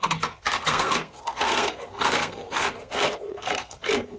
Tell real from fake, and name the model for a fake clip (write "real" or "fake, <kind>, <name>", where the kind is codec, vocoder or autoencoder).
fake, codec, SNAC